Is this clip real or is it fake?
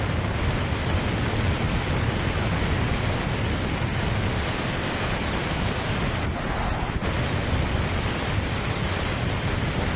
real